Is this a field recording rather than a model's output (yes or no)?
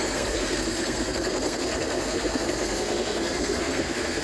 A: no